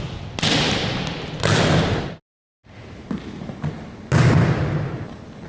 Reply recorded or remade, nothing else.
recorded